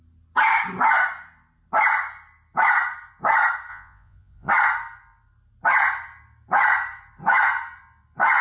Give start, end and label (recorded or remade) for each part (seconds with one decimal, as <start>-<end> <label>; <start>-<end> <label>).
0.0-3.7 recorded; 3.7-4.5 remade; 4.5-8.4 recorded